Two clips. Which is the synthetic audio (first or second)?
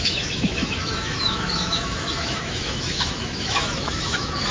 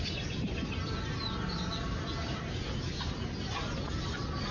first